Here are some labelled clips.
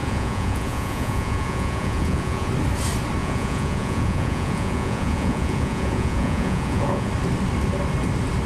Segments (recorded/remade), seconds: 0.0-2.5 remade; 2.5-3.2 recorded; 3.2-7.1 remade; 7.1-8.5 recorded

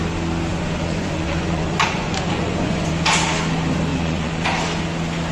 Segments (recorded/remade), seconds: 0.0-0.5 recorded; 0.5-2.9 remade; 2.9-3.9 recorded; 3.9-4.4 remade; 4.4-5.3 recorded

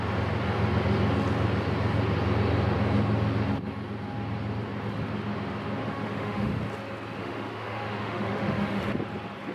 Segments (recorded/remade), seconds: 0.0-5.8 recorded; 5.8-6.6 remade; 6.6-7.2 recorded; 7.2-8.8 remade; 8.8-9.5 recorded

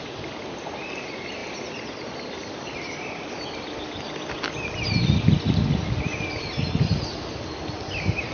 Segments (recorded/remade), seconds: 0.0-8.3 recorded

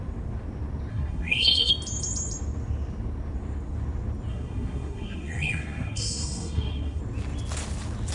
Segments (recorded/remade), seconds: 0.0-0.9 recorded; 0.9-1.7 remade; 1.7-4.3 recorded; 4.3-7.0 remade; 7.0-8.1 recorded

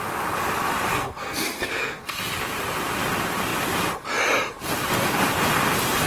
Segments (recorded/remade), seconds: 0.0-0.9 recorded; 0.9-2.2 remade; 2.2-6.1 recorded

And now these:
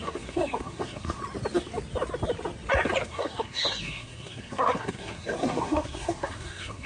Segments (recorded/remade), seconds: 0.0-1.2 remade; 1.2-3.0 recorded; 3.0-6.9 remade

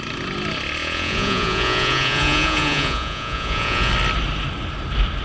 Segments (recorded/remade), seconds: 0.0-0.8 recorded; 0.8-3.9 remade; 3.9-5.2 recorded